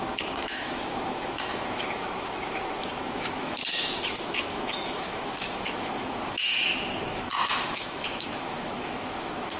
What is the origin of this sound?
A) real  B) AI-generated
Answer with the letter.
B